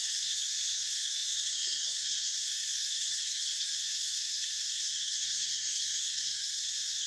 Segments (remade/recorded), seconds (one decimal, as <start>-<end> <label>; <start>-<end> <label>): 0.0-7.1 remade